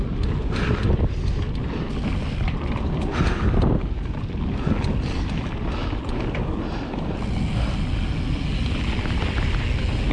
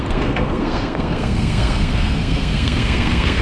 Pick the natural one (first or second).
first